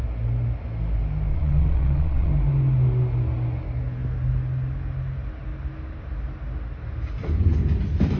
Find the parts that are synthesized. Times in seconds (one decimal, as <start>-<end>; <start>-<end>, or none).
1.3-2.3